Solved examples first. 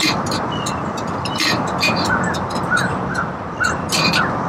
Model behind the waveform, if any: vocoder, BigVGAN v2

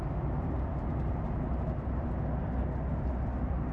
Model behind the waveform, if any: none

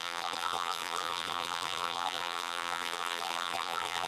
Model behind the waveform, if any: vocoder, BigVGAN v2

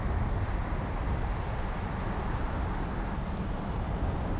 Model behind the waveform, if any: none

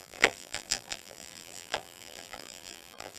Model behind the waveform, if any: vocoder, BigVGAN v2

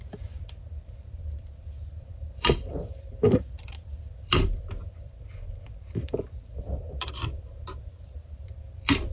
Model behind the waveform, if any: vocoder, BigVGAN v2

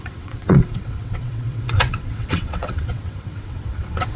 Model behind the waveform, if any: vocoder, WaveNeXt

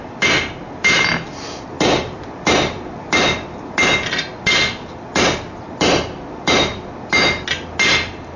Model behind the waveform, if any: none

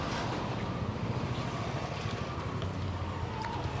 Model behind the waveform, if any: vocoder, BigVGAN v2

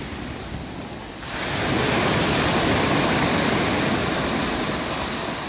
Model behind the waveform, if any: none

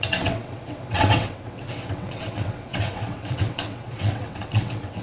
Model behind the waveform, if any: vocoder, WaveNeXt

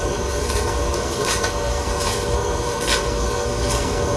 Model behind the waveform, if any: codec, SNAC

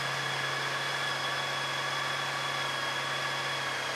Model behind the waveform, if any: none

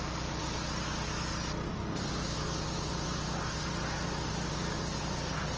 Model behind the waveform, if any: none